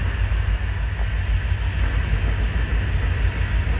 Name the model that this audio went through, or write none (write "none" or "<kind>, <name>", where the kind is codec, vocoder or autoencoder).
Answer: none